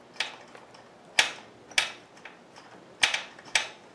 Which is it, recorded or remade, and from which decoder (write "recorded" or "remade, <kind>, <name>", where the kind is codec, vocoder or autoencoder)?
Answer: recorded